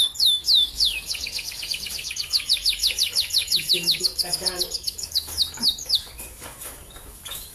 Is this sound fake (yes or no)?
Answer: yes